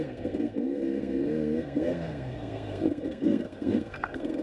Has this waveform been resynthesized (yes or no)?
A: yes